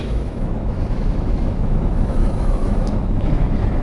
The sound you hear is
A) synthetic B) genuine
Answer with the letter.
A